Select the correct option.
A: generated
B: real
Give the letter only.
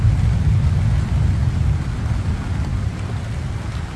B